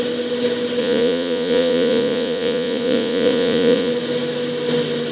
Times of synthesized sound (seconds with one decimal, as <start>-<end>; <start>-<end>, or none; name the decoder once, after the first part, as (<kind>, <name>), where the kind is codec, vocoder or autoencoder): 0.8-3.9 (vocoder, Vocos)